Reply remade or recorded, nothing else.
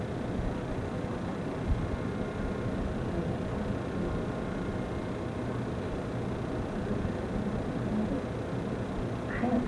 recorded